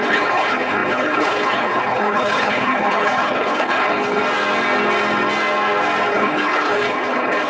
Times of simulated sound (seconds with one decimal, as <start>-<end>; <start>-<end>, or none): 0.0-4.2; 6.1-7.5